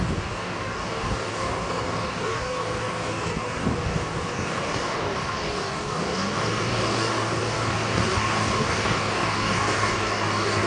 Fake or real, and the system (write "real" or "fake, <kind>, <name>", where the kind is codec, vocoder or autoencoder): fake, codec, DAC